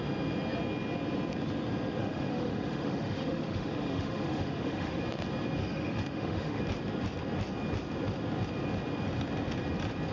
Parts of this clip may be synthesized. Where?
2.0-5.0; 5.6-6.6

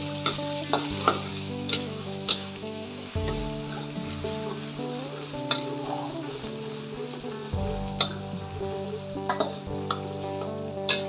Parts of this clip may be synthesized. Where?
1.3-3.4

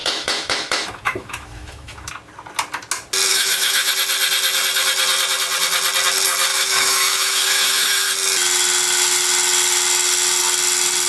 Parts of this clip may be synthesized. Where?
0.0-2.1; 3.3-3.9; 6.5-8.1

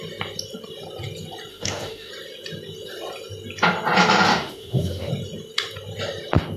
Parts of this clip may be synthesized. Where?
1.5-2.1; 4.3-5.1

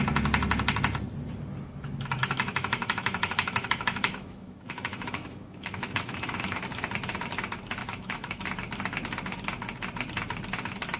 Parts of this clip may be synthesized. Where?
2.2-6.6; 7.8-8.4

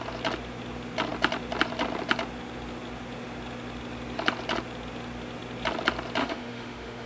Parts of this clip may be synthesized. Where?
6.2-7.1

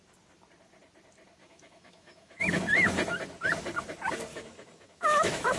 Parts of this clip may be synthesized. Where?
1.4-2.6; 4.3-5.6